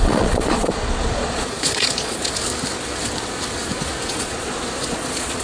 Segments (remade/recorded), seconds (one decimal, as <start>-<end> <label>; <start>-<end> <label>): 0.0-2.5 remade; 2.5-4.1 recorded; 4.1-5.4 remade